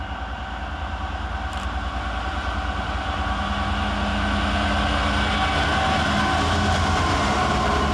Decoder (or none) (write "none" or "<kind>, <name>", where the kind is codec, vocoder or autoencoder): none